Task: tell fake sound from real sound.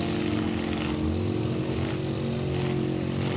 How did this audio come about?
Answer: real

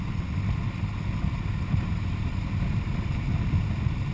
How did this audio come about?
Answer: real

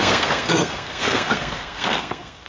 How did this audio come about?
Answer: fake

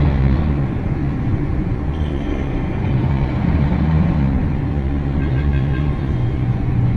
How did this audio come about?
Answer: fake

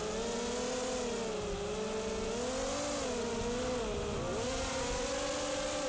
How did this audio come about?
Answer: real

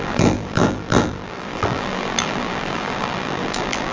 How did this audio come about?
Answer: fake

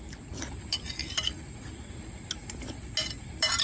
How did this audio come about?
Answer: real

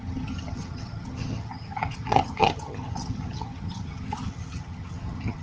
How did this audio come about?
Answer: fake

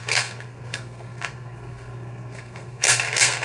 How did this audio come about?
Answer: fake